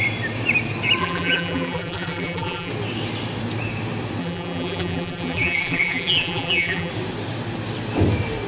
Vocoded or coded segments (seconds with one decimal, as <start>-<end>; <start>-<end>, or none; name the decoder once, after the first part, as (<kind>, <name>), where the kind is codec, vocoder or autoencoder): 1.0-2.7 (vocoder, BigVGAN v2); 4.2-6.9